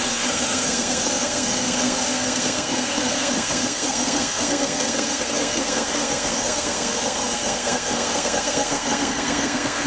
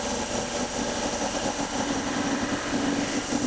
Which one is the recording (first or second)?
second